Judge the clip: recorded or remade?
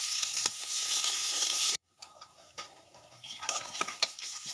remade